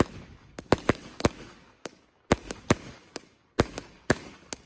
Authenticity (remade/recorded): remade